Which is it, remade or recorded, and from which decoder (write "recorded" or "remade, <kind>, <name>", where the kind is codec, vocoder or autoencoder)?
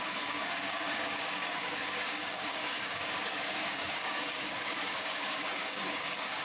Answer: remade, codec, DAC